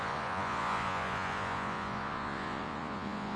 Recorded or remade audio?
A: remade